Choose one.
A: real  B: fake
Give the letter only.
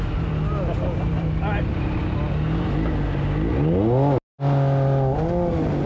A